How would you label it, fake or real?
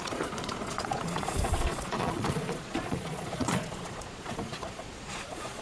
fake